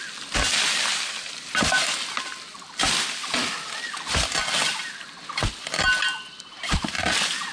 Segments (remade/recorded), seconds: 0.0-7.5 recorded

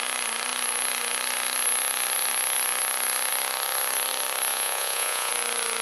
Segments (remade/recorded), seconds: 0.0-4.5 recorded; 4.5-5.3 remade; 5.3-5.8 recorded

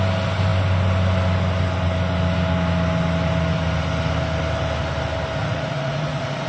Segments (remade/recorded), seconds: 0.0-5.4 recorded; 5.4-6.5 remade

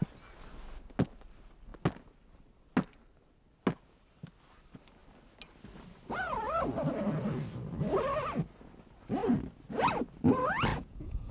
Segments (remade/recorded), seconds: 0.0-10.7 recorded; 10.7-11.3 remade

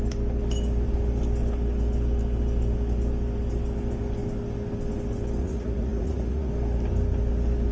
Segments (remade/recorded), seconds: 0.0-5.4 recorded; 5.4-6.5 remade; 6.5-7.7 recorded

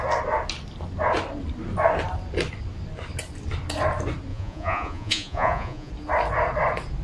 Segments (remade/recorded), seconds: 0.0-4.3 recorded; 4.3-5.9 remade; 5.9-7.0 recorded